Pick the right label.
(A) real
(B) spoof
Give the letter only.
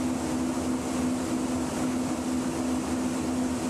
A